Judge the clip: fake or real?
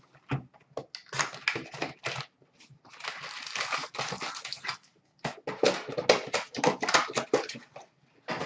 real